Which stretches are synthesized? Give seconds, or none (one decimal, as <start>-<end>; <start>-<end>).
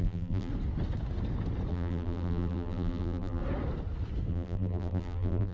0.0-0.5; 1.7-3.4; 4.3-5.5